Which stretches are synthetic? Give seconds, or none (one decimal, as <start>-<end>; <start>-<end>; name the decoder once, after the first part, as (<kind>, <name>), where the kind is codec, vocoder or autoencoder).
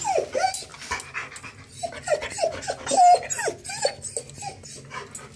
none